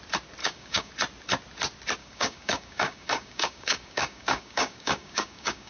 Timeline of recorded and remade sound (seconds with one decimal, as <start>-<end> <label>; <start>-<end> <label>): 0.0-0.4 recorded; 0.4-0.9 remade; 0.9-2.0 recorded; 2.0-5.7 remade